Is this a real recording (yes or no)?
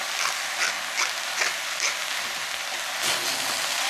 yes